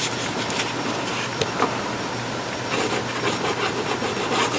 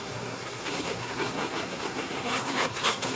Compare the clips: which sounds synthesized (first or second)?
second